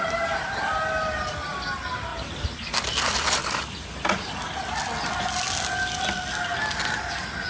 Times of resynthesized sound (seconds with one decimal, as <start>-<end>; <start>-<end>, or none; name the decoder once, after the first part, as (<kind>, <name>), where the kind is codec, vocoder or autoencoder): none